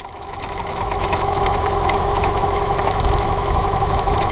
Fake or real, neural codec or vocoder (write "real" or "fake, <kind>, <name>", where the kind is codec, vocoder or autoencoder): fake, autoencoder, DAC-VAE